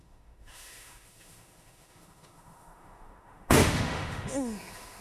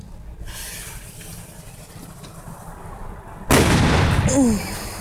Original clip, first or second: second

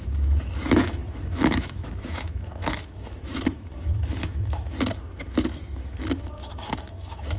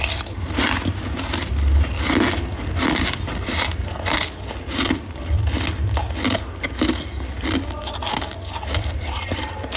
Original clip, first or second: second